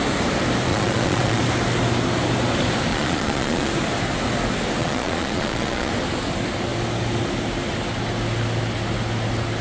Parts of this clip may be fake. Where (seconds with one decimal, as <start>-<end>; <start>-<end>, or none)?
0.7-1.4; 2.9-3.7; 4.8-5.9